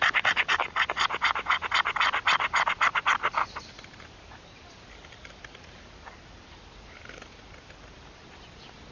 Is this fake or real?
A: fake